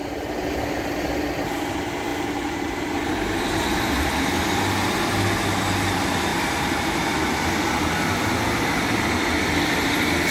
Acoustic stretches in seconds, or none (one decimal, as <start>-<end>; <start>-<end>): 0.0-2.1; 3.6-6.3; 7.5-10.3